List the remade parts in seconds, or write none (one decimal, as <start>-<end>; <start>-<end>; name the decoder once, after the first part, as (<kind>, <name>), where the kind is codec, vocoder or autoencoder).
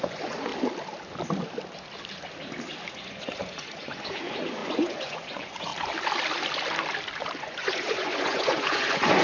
0.0-0.5 (vocoder, Vocos); 2.9-5.7; 7.4-9.2